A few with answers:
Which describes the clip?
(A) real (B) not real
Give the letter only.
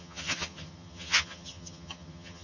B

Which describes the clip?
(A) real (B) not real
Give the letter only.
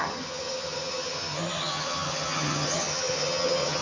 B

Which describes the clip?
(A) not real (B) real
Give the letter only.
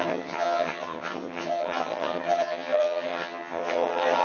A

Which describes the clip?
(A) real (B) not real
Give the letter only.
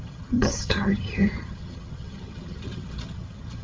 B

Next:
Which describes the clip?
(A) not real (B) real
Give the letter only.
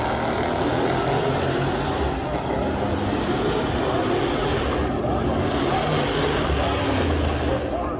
B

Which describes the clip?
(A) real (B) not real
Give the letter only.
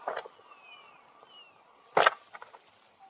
A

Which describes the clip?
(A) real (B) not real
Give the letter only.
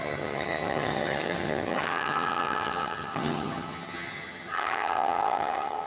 B